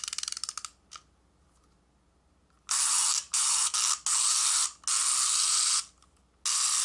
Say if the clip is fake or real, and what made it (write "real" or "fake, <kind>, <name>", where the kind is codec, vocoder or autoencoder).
real